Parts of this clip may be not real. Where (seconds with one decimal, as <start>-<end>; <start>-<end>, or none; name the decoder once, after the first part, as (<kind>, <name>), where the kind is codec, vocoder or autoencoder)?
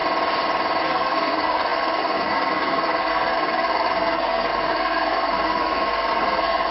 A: 0.8-6.7 (codec, SNAC)